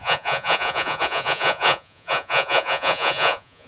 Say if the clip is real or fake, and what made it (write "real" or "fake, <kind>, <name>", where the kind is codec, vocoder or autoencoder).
fake, vocoder, Vocos